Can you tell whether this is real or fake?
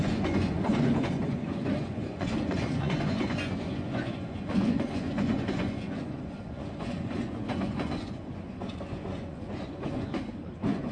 fake